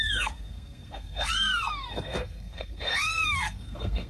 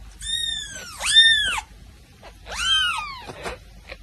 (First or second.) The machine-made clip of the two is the first